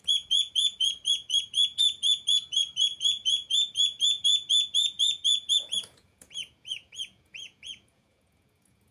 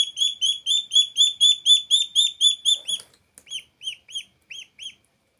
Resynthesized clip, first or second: first